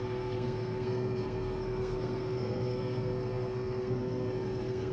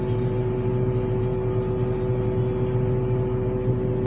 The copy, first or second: first